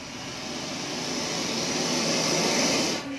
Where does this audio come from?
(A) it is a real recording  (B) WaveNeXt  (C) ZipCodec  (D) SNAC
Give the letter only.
A